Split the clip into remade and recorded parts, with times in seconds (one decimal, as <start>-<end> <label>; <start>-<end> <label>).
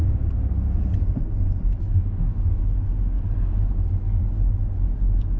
0.0-5.4 recorded